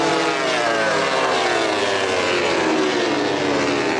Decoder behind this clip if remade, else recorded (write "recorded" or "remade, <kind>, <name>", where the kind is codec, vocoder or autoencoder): recorded